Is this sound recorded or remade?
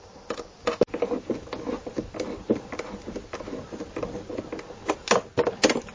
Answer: recorded